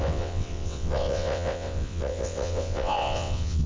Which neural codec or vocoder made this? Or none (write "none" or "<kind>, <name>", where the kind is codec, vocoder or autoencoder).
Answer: vocoder, WaveNeXt